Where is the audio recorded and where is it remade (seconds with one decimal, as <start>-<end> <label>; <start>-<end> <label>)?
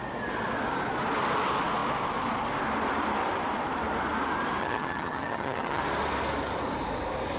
0.0-4.6 recorded; 4.6-5.8 remade; 5.8-7.4 recorded